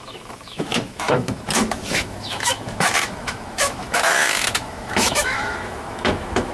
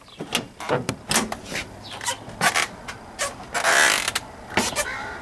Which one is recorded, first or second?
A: second